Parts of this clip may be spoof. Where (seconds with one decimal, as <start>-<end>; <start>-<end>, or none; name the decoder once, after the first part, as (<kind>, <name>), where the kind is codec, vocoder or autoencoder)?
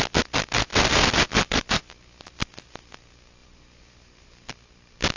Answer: 3.4-4.5 (vocoder, BigVGAN v2)